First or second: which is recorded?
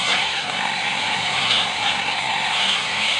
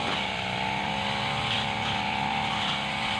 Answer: second